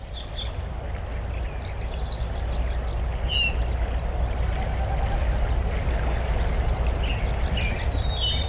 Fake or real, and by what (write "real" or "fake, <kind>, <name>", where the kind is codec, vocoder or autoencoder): real